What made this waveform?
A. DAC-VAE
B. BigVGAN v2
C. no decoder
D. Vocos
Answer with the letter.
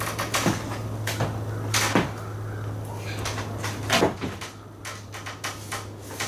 C